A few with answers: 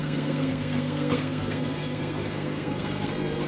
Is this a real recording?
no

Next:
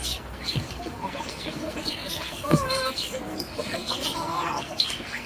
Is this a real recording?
no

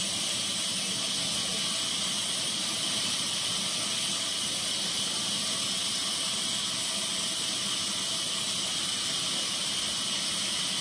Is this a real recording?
yes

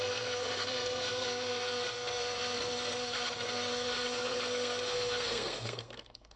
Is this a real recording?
no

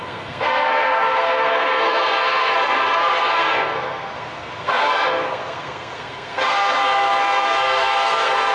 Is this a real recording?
no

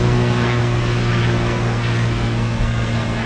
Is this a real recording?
no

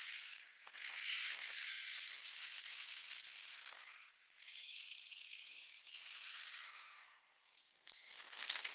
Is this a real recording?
no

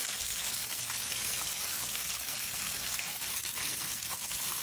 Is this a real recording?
no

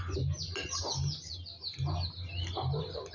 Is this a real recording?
yes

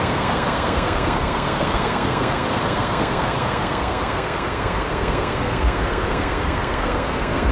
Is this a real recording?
no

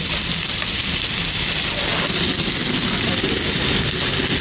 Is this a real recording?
yes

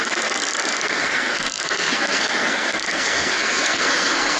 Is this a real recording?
no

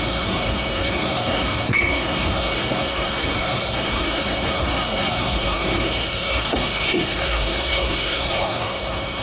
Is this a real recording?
no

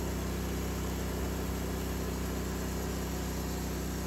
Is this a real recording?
yes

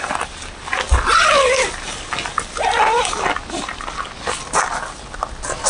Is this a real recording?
yes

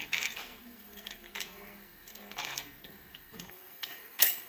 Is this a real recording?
no